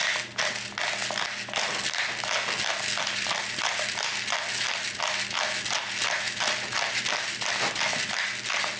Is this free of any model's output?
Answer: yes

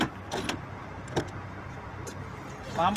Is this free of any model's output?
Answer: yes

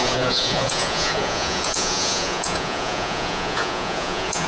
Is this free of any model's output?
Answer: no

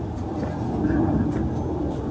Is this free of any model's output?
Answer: yes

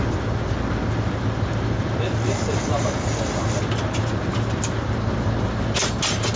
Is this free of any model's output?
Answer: yes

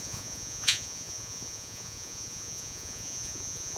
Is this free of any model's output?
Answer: no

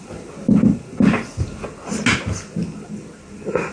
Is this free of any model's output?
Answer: yes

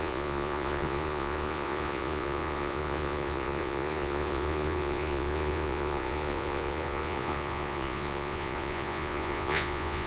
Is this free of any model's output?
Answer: no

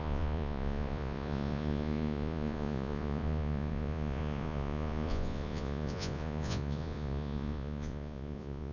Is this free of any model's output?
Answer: no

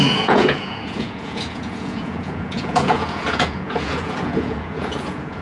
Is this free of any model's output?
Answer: no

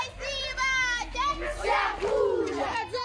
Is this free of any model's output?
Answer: yes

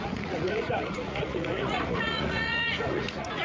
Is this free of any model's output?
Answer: no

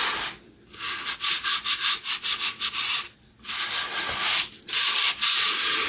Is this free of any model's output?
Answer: yes